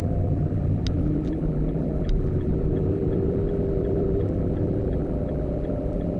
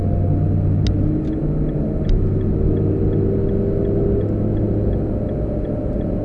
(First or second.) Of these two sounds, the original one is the second